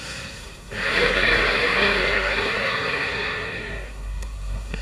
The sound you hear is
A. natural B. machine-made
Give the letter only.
B